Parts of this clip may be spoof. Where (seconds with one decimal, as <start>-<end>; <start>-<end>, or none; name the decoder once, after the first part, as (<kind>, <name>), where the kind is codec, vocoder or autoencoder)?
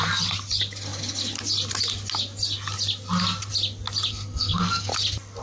4.1-4.9 (codec, SNAC)